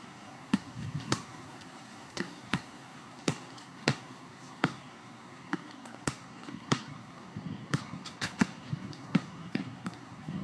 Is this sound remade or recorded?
remade